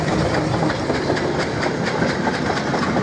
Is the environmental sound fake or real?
real